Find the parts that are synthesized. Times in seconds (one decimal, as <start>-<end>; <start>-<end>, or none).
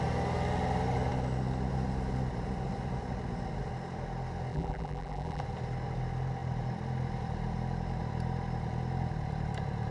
4.5-5.4